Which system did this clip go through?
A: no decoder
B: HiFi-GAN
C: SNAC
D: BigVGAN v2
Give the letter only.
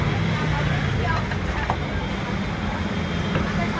A